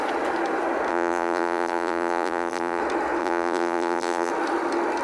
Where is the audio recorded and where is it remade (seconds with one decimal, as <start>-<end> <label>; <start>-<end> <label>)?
0.0-0.9 recorded; 0.9-2.8 remade; 2.8-3.2 recorded; 3.2-4.3 remade; 4.3-5.0 recorded